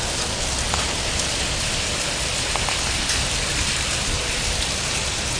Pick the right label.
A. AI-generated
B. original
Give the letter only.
B